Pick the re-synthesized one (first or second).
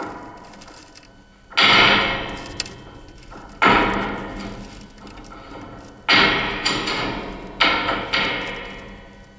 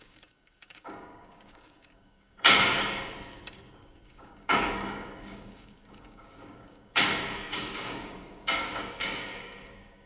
second